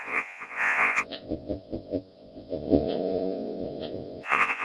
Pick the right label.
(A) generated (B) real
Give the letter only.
A